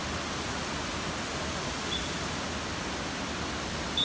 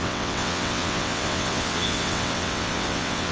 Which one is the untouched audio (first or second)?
first